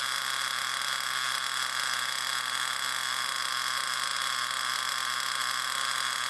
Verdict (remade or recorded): recorded